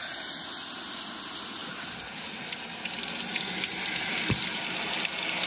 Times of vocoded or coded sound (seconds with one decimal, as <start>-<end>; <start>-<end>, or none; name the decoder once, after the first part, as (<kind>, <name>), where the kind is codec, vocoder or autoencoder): none